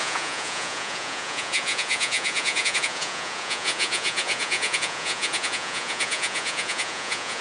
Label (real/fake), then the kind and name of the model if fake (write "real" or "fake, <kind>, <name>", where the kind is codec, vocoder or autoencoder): fake, vocoder, Vocos